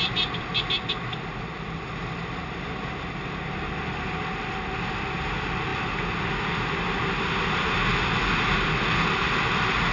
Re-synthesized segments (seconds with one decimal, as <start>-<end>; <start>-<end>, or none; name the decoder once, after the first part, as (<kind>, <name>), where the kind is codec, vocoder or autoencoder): none